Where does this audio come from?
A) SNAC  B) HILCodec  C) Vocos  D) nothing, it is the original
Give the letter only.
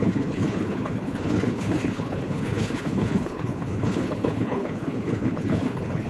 B